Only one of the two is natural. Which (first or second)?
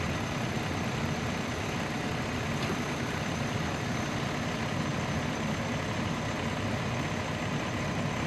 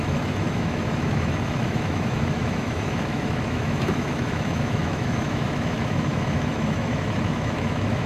first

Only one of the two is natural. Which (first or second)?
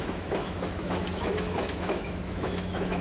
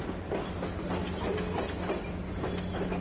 second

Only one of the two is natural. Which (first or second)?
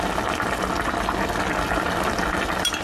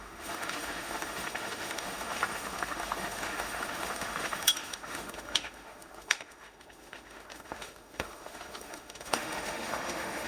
first